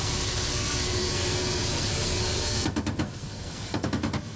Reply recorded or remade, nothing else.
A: remade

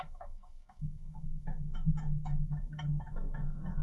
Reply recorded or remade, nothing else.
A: remade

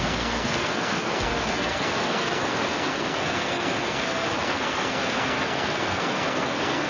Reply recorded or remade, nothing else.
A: remade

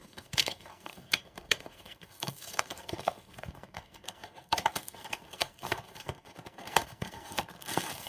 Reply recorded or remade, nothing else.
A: remade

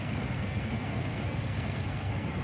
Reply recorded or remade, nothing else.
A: remade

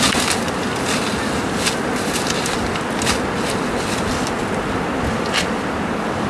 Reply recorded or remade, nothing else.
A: recorded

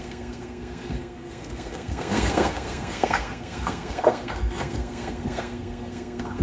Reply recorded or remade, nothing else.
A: remade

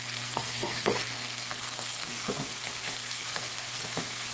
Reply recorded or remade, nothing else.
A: remade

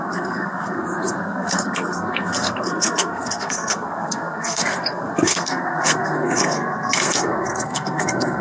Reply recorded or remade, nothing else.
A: remade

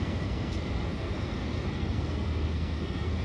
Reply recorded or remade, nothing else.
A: remade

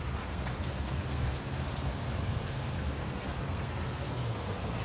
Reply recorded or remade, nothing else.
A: remade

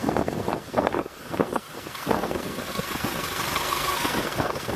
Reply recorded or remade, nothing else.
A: remade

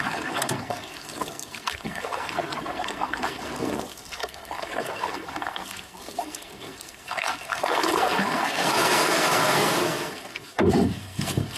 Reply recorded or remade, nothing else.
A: remade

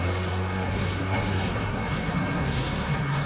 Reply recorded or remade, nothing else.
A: remade